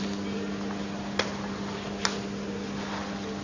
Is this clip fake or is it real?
real